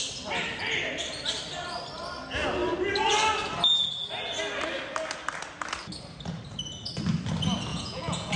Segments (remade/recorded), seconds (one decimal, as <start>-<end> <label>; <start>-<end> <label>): 0.0-7.7 recorded; 7.7-8.4 remade